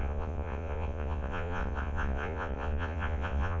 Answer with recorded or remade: remade